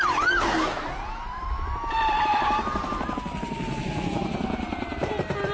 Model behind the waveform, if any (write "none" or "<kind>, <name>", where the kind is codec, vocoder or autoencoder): vocoder, BigVGAN v2